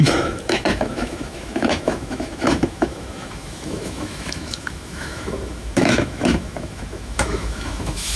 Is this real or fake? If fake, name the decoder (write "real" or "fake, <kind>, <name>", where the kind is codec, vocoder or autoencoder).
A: fake, autoencoder, DAC-VAE